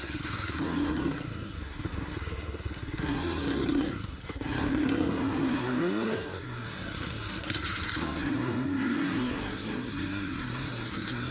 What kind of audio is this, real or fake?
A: fake